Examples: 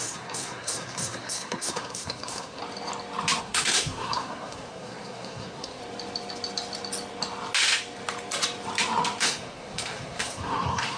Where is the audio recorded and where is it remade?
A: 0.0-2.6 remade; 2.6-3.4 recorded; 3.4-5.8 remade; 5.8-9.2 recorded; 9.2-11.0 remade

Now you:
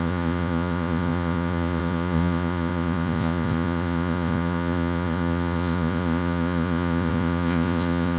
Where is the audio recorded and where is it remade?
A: 0.0-8.2 remade